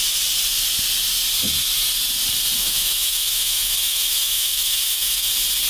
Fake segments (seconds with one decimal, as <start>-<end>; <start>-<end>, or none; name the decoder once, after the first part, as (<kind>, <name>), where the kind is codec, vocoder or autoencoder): 2.6-5.3 (autoencoder, DAC-VAE)